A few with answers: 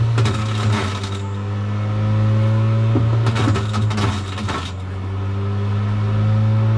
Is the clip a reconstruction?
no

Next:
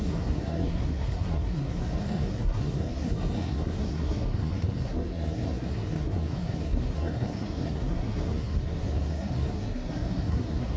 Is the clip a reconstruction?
yes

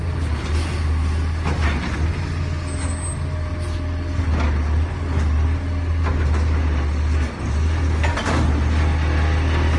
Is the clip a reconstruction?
no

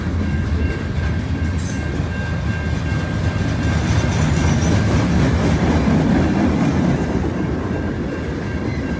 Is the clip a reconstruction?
no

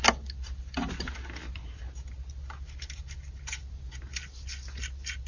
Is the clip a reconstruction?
no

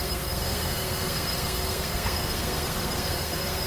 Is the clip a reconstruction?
yes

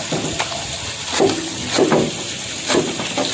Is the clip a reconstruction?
no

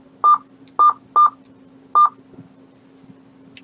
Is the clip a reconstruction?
no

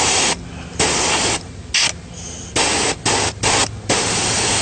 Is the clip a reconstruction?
no